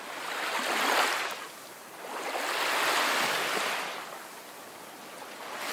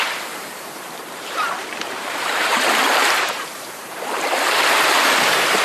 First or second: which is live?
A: first